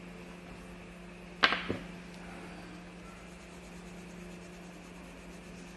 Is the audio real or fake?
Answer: real